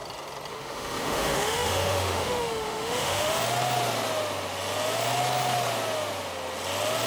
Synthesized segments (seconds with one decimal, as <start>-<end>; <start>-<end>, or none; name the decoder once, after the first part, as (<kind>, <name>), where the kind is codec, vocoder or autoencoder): 0.5-3.4 (autoencoder, DAC-VAE)